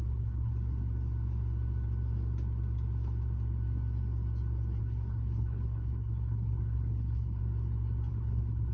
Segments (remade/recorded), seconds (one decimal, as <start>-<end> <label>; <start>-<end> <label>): 0.0-0.5 remade; 0.5-4.8 recorded; 4.8-7.4 remade; 7.4-8.1 recorded; 8.1-8.7 remade